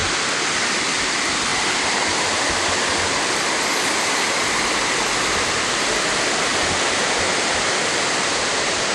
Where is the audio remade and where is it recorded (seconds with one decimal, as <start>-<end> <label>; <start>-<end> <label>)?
0.0-8.9 recorded